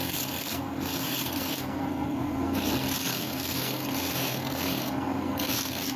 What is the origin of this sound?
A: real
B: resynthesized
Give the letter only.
B